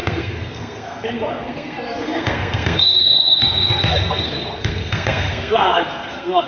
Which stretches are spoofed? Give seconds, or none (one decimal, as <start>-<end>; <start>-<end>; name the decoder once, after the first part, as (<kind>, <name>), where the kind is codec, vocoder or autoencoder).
0.0-6.5 (codec, SNAC)